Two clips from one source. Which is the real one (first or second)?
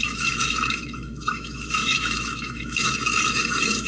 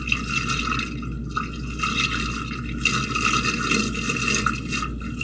second